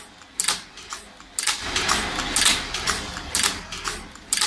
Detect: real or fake real